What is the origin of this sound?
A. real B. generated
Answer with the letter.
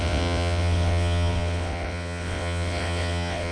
B